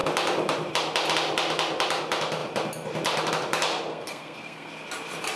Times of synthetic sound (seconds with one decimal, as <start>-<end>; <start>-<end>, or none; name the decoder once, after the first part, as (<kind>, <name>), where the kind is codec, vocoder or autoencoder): 3.9-4.7 (codec, SNAC)